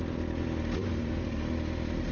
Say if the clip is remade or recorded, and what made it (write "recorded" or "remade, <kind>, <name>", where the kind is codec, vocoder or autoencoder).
recorded